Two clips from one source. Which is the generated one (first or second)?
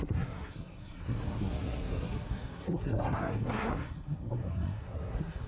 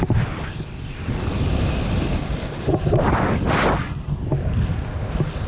first